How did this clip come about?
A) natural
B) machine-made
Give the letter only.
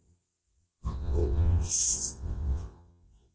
B